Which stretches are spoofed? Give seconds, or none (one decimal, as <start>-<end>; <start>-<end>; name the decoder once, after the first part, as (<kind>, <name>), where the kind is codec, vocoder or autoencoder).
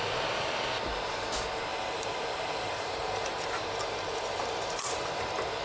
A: 1.7-5.1 (vocoder, BigVGAN v2)